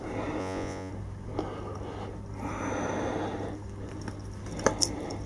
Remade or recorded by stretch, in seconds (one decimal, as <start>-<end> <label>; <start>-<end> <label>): 0.0-0.4 recorded; 0.4-0.9 remade; 0.9-5.3 recorded